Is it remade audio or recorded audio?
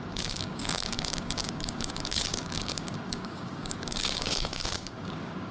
remade